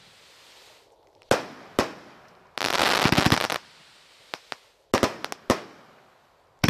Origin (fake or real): real